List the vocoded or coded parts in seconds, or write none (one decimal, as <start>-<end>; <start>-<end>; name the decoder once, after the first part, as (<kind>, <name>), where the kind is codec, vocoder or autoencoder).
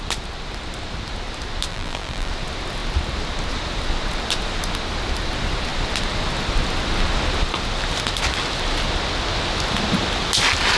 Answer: 1.7-2.3 (vocoder, BigVGAN v2)